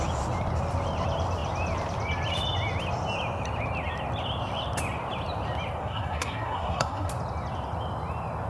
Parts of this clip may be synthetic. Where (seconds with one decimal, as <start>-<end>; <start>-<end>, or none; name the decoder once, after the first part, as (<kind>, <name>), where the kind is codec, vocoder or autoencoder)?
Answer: 5.8-7.1 (codec, SNAC)